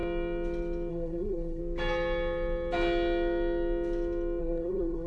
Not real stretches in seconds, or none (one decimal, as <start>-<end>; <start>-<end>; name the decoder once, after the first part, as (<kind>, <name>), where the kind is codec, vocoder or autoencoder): 0.9-1.6 (codec, SNAC); 4.4-5.1